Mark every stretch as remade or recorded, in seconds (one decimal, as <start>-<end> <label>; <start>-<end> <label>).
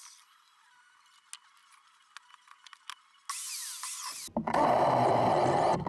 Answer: 0.0-5.9 recorded